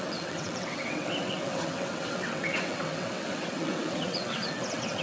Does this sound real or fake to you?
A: fake